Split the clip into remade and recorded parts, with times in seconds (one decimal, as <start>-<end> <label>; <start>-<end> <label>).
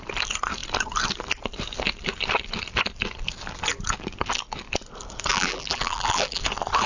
0.0-5.3 recorded; 5.3-6.4 remade; 6.4-6.9 recorded